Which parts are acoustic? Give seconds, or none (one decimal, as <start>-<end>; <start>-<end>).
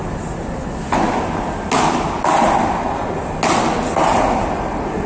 0.0-5.1